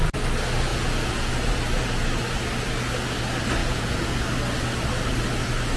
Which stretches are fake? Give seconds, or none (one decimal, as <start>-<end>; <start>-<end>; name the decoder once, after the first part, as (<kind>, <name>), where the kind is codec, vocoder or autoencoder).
0.7-1.3 (vocoder, Vocos); 3.6-4.1